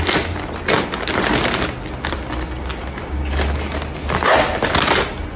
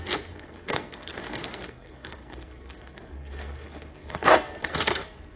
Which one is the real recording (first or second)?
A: first